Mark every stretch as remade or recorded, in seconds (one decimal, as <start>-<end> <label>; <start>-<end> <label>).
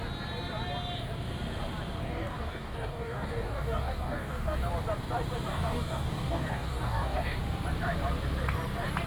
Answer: 0.0-2.0 recorded; 2.0-4.7 remade; 4.7-5.5 recorded; 5.5-7.4 remade; 7.4-9.1 recorded